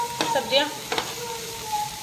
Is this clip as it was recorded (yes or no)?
yes